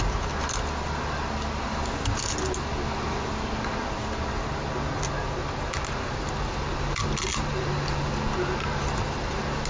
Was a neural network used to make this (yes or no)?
no